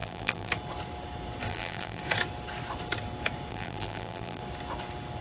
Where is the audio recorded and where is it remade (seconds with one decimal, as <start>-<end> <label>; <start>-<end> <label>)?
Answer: 0.0-0.5 remade; 0.5-1.5 recorded; 1.5-2.0 remade; 2.0-3.5 recorded; 3.5-4.4 remade; 4.4-5.2 recorded